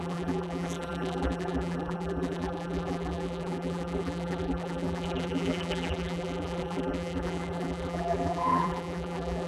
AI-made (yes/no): yes